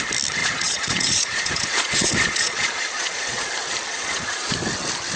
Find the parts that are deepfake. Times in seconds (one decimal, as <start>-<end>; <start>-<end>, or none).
0.4-3.5; 3.9-4.5